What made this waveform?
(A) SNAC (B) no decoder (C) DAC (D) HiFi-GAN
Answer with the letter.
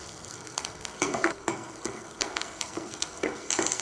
A